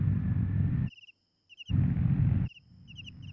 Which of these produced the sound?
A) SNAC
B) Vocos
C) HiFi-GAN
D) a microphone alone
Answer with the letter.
D